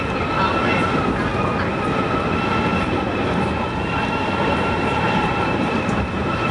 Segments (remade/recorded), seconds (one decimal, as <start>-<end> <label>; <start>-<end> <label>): 0.0-1.3 recorded; 1.3-2.2 remade; 2.2-2.7 recorded; 2.7-6.5 remade